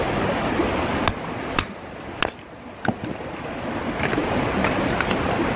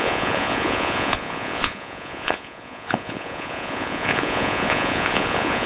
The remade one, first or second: second